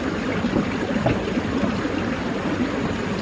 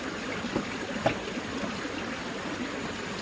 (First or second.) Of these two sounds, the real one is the second